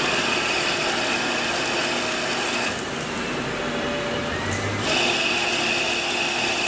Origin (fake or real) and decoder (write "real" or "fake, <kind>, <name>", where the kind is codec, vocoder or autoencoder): real